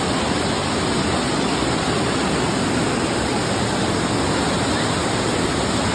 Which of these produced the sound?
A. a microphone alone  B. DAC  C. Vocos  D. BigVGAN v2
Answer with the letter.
A